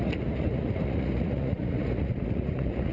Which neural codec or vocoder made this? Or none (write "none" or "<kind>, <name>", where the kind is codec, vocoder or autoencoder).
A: vocoder, Vocos